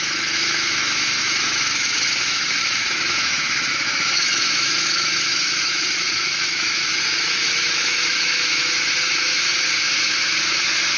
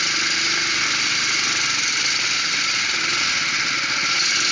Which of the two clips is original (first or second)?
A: second